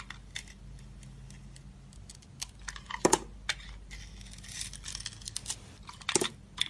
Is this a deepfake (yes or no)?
no